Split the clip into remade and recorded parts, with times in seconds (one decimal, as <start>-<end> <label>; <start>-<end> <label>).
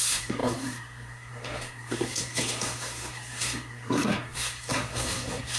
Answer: 0.0-5.6 remade